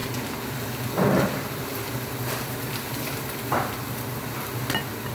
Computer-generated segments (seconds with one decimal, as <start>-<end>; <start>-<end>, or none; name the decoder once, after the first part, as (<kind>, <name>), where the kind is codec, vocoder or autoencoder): none

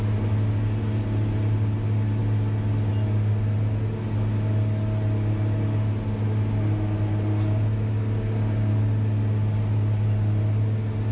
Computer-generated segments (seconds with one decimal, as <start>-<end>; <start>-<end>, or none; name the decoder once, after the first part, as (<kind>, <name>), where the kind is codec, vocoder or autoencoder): none

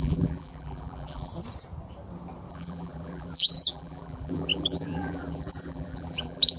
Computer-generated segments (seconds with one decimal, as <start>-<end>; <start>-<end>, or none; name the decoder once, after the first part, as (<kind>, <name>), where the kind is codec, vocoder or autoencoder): 0.0-1.3 (vocoder, BigVGAN v2); 2.5-6.6

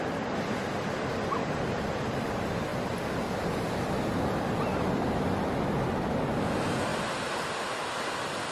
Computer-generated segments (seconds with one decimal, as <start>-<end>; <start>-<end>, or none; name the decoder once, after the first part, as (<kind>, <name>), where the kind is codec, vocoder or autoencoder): 1.4-1.9 (vocoder, BigVGAN v2); 6.9-7.9

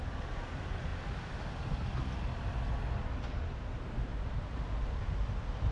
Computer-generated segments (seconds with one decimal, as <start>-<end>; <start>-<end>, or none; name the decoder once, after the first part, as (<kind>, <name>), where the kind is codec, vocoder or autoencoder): 0.0-0.9 (vocoder, BigVGAN v2); 3.8-5.7